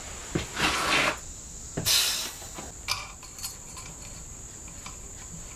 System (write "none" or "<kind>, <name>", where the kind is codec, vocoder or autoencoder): none